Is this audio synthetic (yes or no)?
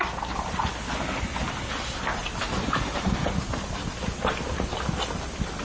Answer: no